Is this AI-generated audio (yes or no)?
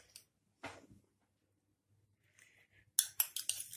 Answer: no